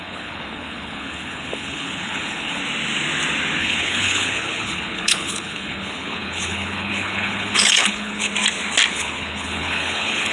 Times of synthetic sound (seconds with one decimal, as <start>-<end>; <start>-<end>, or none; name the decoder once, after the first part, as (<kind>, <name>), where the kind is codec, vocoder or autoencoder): 0.0-2.6 (codec, HILCodec); 3.6-8.3; 8.9-10.3